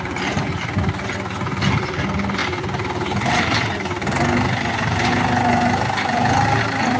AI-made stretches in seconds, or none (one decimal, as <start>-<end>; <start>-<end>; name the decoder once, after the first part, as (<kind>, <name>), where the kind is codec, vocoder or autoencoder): none